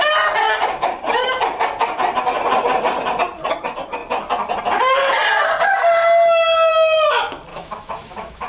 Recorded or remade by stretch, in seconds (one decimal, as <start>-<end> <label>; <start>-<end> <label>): 0.0-7.5 recorded; 7.5-8.5 remade